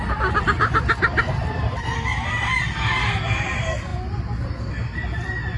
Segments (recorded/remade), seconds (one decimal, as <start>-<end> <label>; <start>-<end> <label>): 0.0-5.6 recorded